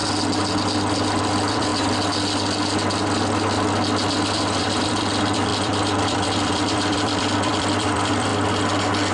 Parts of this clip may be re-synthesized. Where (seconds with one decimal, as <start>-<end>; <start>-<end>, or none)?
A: 1.2-1.7; 4.6-8.3